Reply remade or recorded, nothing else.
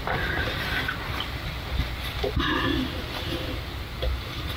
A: recorded